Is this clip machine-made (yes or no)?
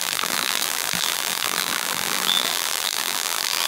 yes